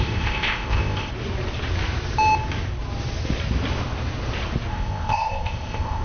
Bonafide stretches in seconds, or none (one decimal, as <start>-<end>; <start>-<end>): 1.1-4.7